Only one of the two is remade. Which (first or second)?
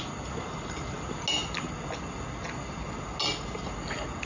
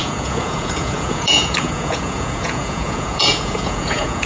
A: second